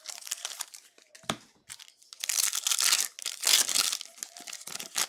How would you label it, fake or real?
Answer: real